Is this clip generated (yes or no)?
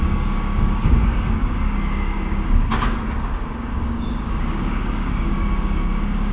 yes